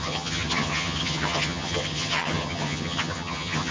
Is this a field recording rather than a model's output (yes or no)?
no